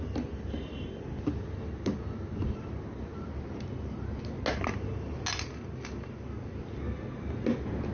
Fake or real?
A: real